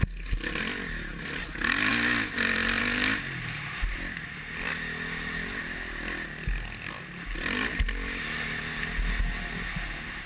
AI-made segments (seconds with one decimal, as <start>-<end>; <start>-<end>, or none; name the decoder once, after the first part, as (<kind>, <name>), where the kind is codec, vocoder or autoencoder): none